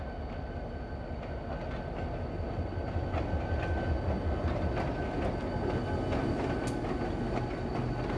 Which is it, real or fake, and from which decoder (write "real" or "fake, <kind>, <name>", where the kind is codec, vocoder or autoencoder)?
real